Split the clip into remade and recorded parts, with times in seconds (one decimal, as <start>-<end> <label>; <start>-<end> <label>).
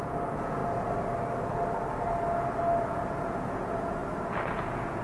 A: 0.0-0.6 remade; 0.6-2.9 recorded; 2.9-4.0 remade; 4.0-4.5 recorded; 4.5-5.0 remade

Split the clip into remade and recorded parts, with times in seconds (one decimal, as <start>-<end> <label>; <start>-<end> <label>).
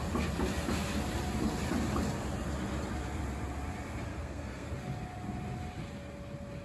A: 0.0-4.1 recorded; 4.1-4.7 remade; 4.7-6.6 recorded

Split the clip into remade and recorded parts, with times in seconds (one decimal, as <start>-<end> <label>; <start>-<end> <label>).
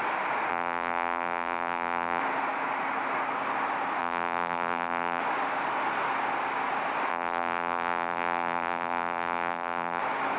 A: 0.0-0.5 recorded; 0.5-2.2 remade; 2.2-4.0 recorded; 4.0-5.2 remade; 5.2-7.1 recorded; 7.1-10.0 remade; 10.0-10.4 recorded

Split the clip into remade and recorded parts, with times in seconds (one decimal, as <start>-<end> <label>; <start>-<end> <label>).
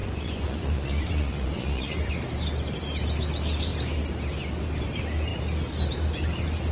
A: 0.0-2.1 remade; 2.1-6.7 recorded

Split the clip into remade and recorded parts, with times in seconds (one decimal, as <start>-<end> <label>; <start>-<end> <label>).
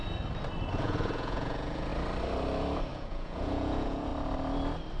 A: 0.0-0.7 recorded; 0.7-1.9 remade; 1.9-2.9 recorded; 2.9-4.1 remade; 4.1-5.0 recorded